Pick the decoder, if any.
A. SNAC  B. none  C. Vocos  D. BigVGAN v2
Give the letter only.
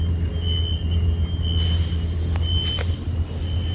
B